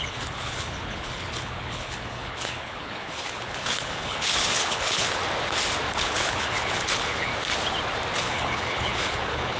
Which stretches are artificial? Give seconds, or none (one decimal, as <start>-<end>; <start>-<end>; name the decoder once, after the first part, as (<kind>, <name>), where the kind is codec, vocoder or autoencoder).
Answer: 0.0-5.2 (codec, HILCodec); 5.9-7.3; 8.2-9.6